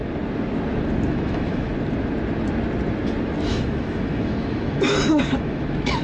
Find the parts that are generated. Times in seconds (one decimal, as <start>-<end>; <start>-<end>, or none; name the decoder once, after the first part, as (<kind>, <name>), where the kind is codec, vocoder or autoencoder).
1.1-1.7 (autoencoder, DAC-VAE); 3.5-6.0